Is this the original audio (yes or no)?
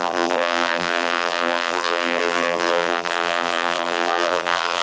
no